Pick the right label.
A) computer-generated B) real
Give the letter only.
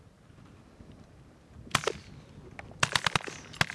B